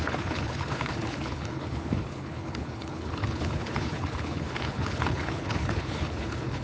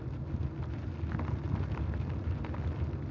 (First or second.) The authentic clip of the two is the second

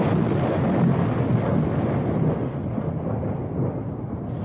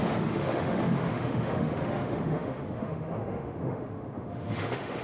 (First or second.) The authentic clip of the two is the first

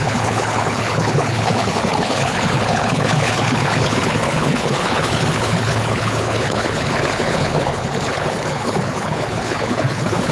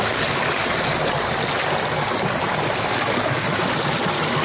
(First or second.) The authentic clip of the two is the second